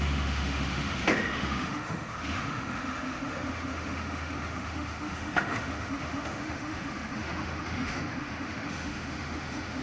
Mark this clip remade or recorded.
remade